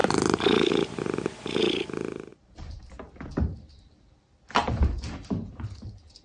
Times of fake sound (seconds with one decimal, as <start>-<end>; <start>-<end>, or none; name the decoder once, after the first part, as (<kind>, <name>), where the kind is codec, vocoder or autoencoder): 2.3-3.2 (vocoder, BigVGAN v2); 4.6-6.2